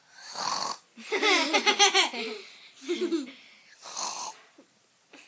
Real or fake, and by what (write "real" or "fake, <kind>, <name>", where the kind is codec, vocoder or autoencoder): real